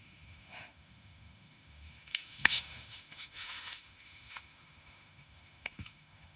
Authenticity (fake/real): fake